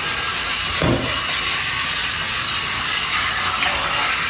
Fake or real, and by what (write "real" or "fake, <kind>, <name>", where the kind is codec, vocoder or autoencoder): real